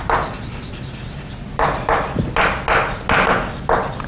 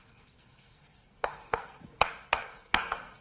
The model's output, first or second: second